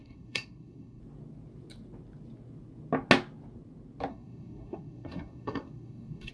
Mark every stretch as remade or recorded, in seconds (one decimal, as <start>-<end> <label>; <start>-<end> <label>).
0.0-1.0 remade; 1.0-4.1 recorded; 4.1-6.3 remade